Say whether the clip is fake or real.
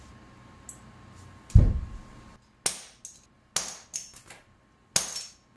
real